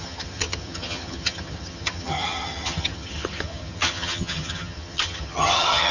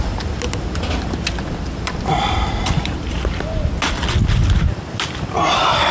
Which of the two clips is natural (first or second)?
second